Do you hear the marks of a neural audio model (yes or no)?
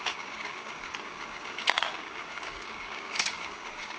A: yes